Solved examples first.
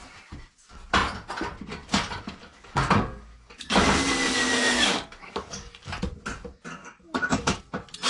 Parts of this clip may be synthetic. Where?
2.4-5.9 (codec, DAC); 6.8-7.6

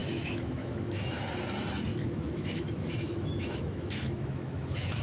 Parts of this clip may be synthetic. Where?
0.0-1.2 (autoencoder, DAC-VAE); 1.9-5.0